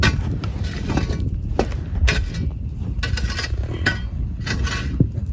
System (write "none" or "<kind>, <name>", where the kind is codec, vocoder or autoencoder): none